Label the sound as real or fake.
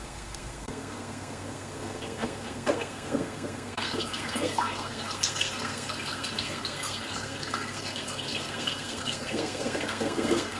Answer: fake